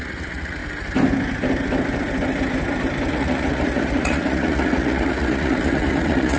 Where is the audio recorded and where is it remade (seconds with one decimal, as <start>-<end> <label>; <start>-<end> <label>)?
0.0-0.6 remade; 0.6-3.1 recorded; 3.1-6.4 remade